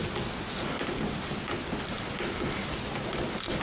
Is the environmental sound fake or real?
real